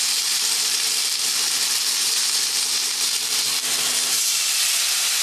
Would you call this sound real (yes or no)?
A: no